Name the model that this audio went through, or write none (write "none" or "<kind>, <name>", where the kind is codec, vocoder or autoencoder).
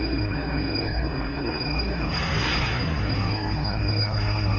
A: codec, SNAC